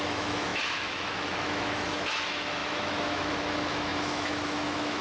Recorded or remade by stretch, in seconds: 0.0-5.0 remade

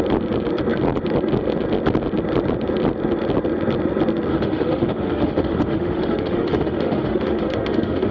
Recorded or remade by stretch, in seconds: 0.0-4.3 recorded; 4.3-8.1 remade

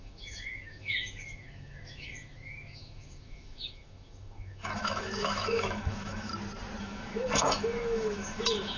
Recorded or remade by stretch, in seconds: 0.0-6.3 remade; 6.3-6.8 recorded; 6.8-8.8 remade

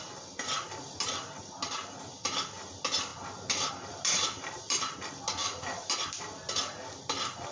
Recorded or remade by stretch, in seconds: 0.0-5.4 recorded; 5.4-5.9 remade; 5.9-7.5 recorded